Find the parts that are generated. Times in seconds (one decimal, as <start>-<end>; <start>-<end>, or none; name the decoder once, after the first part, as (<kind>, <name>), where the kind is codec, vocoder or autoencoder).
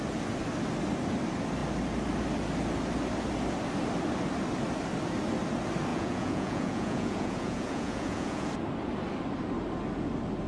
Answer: 5.9-8.5 (vocoder, Vocos)